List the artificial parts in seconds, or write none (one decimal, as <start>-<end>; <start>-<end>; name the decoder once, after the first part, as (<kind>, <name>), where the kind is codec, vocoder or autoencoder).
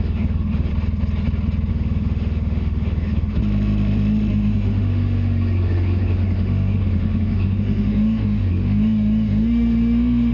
0.0-0.7 (autoencoder, DAC-VAE); 1.7-3.4; 4.3-10.3